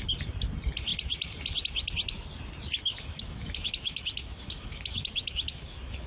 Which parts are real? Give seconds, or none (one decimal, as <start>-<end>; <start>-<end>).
0.0-2.9